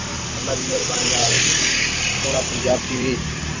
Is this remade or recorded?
remade